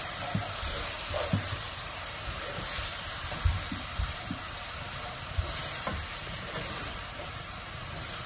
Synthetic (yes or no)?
yes